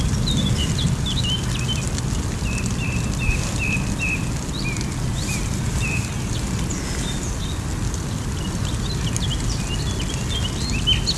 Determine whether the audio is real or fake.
real